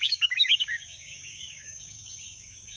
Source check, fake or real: fake